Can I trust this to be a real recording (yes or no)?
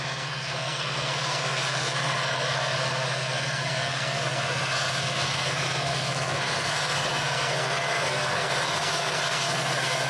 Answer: no